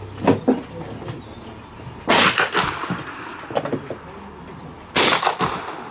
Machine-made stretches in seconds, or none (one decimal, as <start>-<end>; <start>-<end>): none